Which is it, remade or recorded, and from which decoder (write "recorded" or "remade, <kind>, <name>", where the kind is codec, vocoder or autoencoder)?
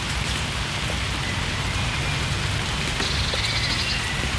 recorded